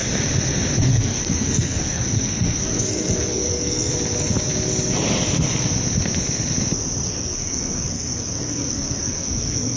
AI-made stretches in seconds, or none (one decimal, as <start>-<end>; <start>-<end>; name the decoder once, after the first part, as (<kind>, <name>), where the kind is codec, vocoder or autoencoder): 0.8-3.9 (codec, SNAC); 7.1-9.8